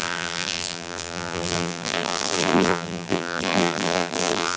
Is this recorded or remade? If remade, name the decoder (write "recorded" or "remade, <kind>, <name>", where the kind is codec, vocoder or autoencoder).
remade, vocoder, BigVGAN v2